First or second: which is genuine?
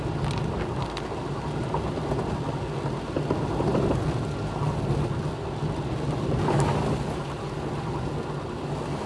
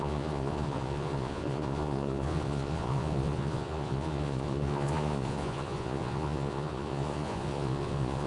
first